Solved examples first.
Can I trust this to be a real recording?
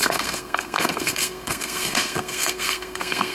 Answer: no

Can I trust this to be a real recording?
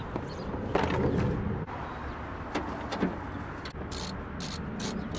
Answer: yes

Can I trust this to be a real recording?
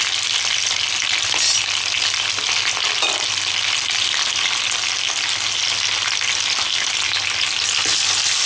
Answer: yes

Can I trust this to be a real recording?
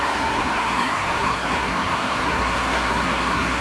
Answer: no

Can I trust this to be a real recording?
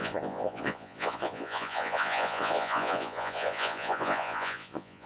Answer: no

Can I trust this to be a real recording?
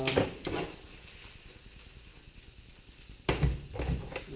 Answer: yes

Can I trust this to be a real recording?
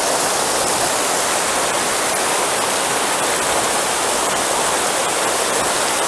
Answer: yes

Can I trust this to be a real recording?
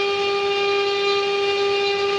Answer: yes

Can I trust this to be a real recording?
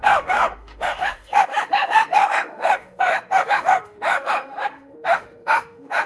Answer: no